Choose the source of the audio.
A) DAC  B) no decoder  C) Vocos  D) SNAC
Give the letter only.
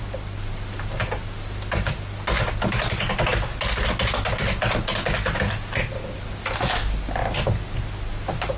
B